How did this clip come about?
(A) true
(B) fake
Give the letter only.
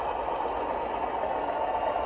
A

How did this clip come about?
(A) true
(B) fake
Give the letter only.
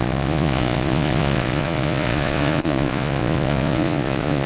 B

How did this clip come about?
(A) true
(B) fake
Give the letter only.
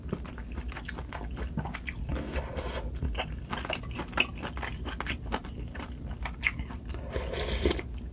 A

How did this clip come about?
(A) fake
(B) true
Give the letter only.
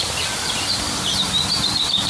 A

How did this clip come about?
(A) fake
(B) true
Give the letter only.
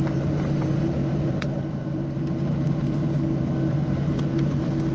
A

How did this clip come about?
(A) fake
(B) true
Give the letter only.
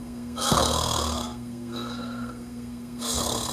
A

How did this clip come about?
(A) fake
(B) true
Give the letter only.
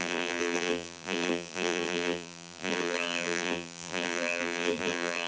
A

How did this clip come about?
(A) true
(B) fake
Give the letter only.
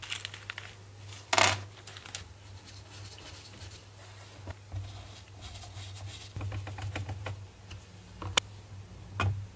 A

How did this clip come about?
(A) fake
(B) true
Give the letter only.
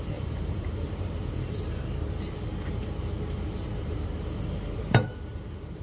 A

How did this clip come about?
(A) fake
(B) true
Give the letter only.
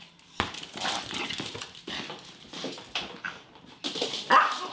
B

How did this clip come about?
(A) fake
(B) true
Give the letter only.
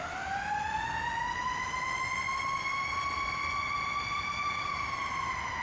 A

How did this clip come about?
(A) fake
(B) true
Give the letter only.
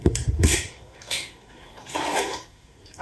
A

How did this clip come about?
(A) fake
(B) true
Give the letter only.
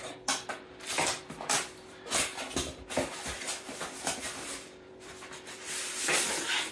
A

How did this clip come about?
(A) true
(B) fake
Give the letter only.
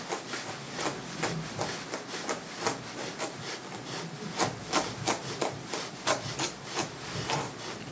A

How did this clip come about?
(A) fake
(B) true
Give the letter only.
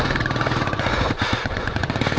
A